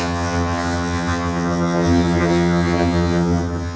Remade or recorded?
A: remade